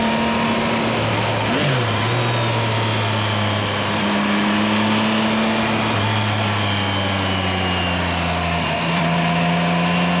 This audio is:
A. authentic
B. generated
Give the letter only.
A